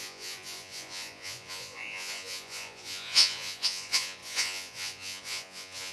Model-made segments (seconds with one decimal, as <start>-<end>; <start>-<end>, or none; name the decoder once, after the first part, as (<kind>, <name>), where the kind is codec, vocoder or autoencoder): 0.0-5.9 (vocoder, Vocos)